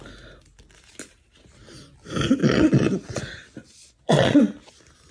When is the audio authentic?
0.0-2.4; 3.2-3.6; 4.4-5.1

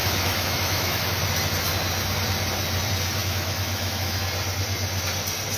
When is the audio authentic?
1.1-3.2; 4.2-5.6

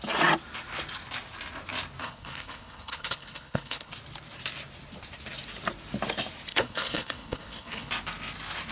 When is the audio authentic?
0.0-2.0; 3.9-6.5; 7.9-8.7

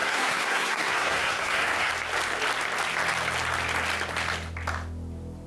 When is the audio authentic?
1.9-5.5

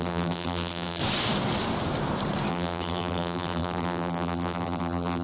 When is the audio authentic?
1.0-2.5

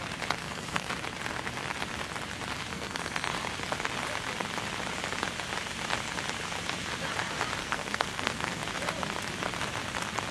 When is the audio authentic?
0.0-0.4; 0.9-2.7; 3.3-7.6; 8.6-10.3

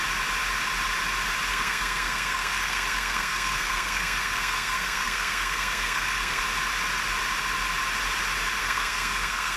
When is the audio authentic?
0.0-1.5; 6.4-8.6

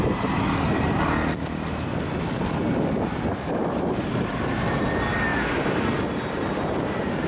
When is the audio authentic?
0.0-3.6; 4.8-5.3; 5.8-7.3